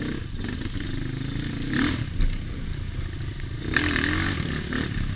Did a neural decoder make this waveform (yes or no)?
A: no